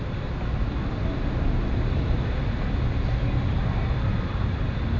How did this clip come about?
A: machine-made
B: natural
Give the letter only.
B